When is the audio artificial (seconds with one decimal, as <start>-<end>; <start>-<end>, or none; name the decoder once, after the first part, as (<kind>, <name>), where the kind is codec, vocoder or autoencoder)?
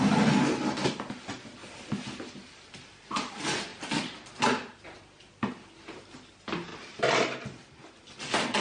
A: 1.6-3.3 (vocoder, BigVGAN v2); 6.7-8.2